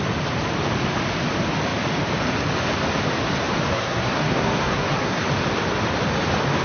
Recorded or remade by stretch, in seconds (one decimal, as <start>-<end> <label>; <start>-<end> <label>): 0.0-3.7 recorded; 3.7-5.2 remade; 5.2-6.6 recorded